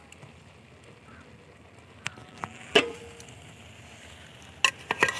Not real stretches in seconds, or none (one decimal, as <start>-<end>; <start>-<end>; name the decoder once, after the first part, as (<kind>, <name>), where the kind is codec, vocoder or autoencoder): 2.2-3.0 (vocoder, BigVGAN v2)